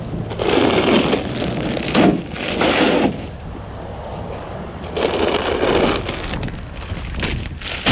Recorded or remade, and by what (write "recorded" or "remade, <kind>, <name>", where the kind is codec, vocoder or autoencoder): recorded